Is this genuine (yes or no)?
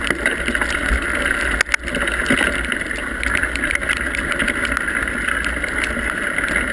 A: yes